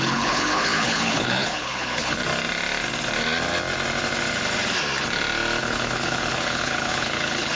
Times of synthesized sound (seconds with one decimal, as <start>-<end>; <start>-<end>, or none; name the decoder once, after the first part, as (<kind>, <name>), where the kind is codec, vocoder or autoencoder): 0.0-2.2 (codec, HILCodec); 5.6-7.5